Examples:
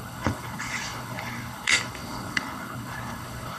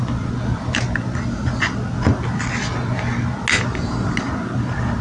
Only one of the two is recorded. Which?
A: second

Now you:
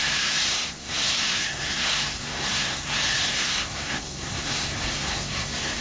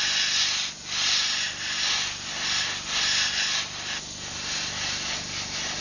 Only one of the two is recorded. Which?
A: second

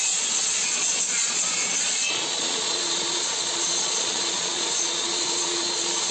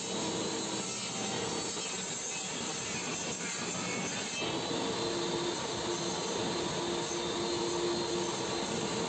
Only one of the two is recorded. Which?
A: second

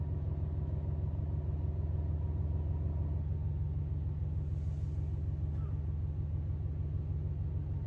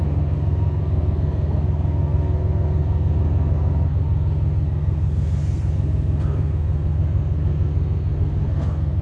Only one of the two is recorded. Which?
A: first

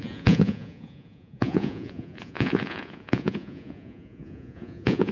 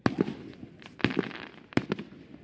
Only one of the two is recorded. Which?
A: second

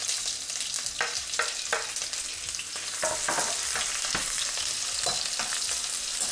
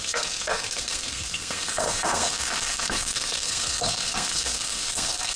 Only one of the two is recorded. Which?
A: first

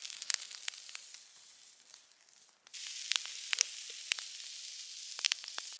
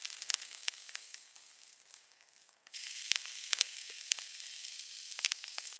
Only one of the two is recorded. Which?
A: first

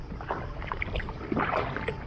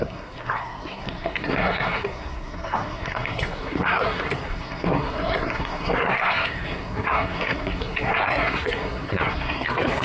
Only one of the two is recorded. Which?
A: first